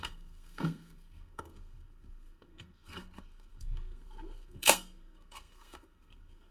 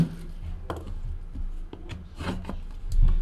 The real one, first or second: second